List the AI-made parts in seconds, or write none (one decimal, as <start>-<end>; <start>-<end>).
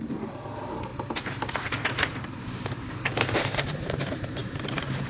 0.0-0.9; 2.7-5.1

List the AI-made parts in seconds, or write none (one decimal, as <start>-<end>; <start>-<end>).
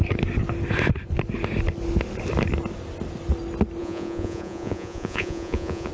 3.8-5.9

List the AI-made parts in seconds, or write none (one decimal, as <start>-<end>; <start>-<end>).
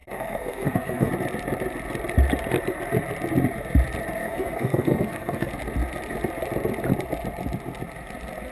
0.0-1.1; 4.2-5.5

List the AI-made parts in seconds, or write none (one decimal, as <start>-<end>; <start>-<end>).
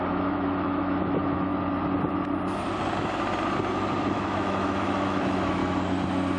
0.0-1.5; 4.1-5.6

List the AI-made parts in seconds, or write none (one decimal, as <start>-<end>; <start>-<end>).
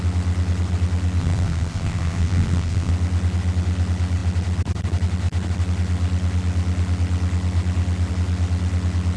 1.2-2.9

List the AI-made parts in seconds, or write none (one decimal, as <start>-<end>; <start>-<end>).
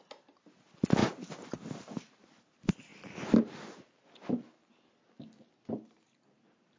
none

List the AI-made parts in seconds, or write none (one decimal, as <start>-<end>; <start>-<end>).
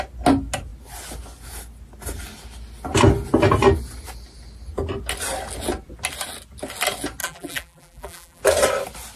7.2-8.4